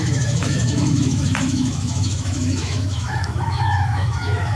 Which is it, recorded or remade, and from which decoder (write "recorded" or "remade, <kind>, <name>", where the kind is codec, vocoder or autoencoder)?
remade, autoencoder, DAC-VAE